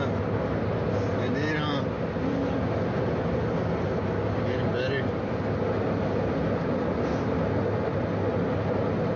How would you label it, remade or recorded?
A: recorded